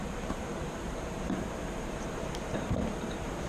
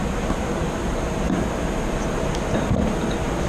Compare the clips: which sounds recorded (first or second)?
second